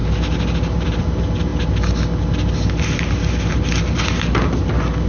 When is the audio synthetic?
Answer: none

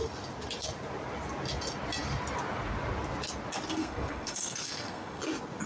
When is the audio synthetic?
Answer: 3.7-5.2 (codec, SNAC)

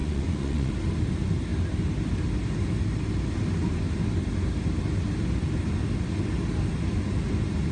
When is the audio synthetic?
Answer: 0.0-0.7 (vocoder, Vocos)

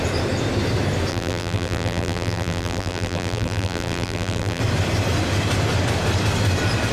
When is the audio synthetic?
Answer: 1.1-4.6 (vocoder, BigVGAN v2)

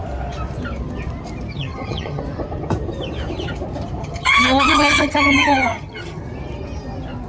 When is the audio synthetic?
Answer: 1.5-2.2 (vocoder, HiFi-GAN); 4.0-6.2

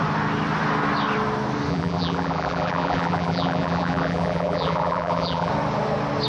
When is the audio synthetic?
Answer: 1.7-5.5 (vocoder, BigVGAN v2)

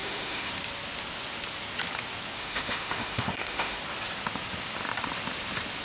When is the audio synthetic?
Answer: 0.0-0.5 (autoencoder, DAC-VAE); 2.4-3.8

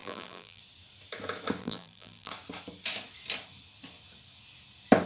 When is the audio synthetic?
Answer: 0.0-0.6 (vocoder, BigVGAN v2); 1.6-2.3